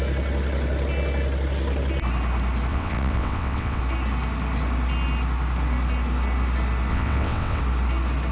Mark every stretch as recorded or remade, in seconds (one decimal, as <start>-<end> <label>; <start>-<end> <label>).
0.0-2.7 recorded; 2.7-3.8 remade; 3.8-6.9 recorded; 6.9-7.6 remade; 7.6-8.3 recorded